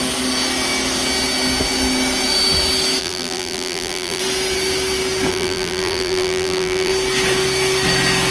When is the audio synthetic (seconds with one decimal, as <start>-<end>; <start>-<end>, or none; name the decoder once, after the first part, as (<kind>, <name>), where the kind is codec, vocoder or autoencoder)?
3.0-4.2 (vocoder, BigVGAN v2); 5.3-6.9